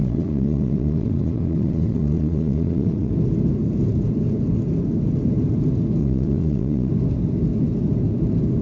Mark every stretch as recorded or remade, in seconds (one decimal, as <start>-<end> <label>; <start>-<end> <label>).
0.0-3.1 remade; 3.1-6.0 recorded; 6.0-6.9 remade; 6.9-8.6 recorded